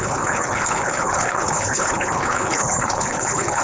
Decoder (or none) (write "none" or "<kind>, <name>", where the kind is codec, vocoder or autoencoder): codec, HILCodec